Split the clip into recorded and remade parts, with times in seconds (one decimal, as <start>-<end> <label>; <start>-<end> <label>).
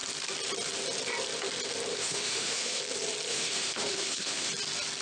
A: 0.0-1.9 recorded; 1.9-2.8 remade; 2.8-3.3 recorded; 3.3-4.5 remade; 4.5-5.0 recorded